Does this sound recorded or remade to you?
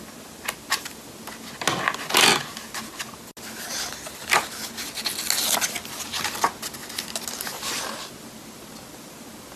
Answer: recorded